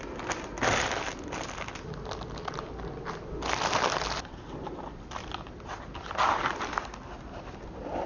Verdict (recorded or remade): recorded